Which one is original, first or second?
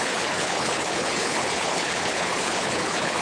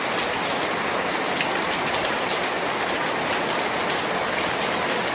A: second